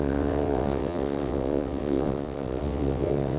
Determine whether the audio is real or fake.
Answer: fake